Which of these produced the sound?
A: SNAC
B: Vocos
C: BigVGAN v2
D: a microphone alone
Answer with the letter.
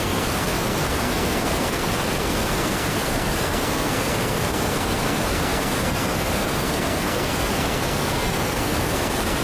A